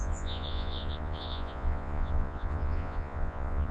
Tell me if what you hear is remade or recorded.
remade